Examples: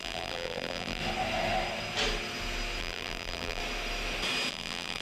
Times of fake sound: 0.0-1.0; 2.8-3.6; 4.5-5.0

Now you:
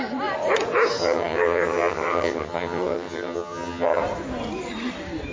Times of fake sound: 1.0-4.0